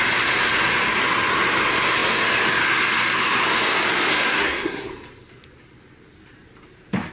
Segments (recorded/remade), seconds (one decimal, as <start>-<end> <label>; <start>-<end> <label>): 0.0-4.1 recorded; 4.1-4.9 remade; 4.9-7.1 recorded